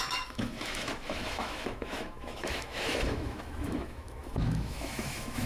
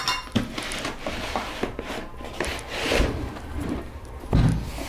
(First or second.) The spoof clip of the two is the first